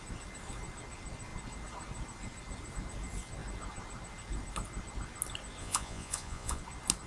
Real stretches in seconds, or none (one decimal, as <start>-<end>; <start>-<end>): 0.0-5.6; 6.6-7.1